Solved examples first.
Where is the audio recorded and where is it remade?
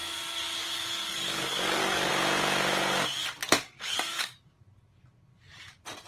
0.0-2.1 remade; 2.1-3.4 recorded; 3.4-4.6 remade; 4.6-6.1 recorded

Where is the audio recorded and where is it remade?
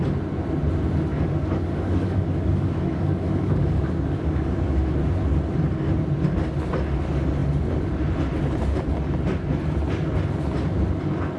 0.0-1.1 recorded; 1.1-4.9 remade; 4.9-11.4 recorded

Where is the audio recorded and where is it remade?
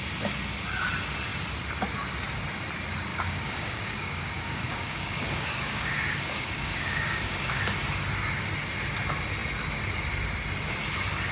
0.0-3.1 recorded; 3.1-7.6 remade; 7.6-11.3 recorded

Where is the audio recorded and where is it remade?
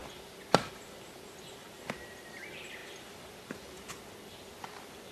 0.0-5.1 recorded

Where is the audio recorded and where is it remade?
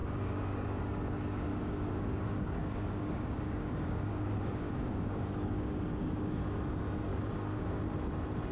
0.0-1.0 remade; 1.0-1.5 recorded; 1.5-6.6 remade; 6.6-7.1 recorded; 7.1-7.8 remade; 7.8-8.5 recorded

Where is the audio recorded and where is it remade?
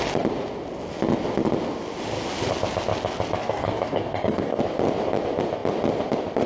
0.0-3.4 recorded; 3.4-4.6 remade; 4.6-6.5 recorded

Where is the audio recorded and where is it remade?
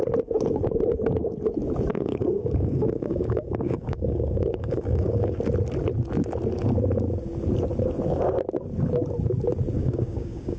0.0-1.9 recorded; 1.9-5.4 remade; 5.4-9.8 recorded; 9.8-10.6 remade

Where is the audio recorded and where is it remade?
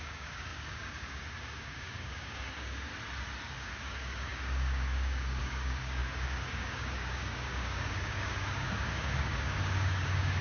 0.0-2.9 remade; 2.9-3.5 recorded; 3.5-10.4 remade